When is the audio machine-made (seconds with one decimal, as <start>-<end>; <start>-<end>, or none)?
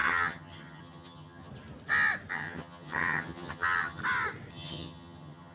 0.0-1.5; 2.3-4.0; 4.5-5.5